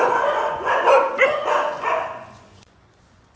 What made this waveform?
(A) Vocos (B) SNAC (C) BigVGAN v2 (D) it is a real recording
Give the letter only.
A